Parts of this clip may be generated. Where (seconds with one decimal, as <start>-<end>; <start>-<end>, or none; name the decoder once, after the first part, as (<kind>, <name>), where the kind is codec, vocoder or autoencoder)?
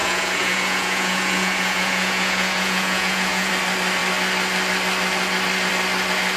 0.0-3.5 (vocoder, Vocos)